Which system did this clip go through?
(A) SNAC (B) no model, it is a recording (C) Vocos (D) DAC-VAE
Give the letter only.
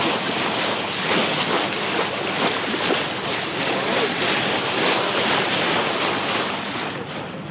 B